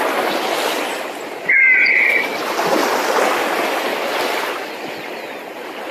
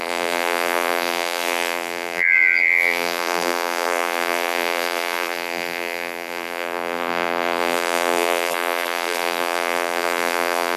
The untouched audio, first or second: first